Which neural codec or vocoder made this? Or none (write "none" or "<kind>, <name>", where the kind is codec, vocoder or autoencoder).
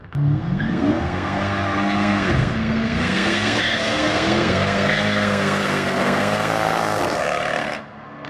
codec, SNAC